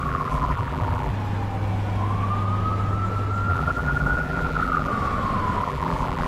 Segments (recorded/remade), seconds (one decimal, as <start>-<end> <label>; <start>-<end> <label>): 0.0-1.1 remade; 1.1-3.5 recorded; 3.5-4.9 remade; 4.9-5.6 recorded; 5.6-6.3 remade